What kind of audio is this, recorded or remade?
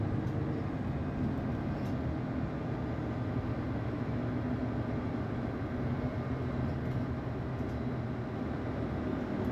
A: recorded